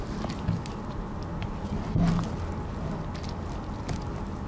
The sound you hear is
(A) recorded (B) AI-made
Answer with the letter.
A